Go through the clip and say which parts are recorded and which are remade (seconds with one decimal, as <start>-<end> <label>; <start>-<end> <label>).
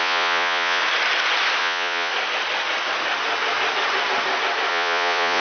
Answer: 0.0-0.8 remade; 0.8-1.6 recorded; 1.6-2.1 remade; 2.1-4.7 recorded; 4.7-5.4 remade